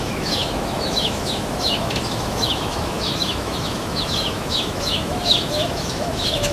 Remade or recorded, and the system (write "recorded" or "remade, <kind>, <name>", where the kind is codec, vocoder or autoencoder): remade, autoencoder, DAC-VAE